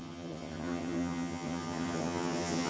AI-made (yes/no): yes